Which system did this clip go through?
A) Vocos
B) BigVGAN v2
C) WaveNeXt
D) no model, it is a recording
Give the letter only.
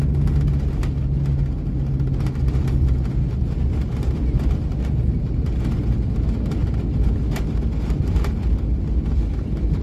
D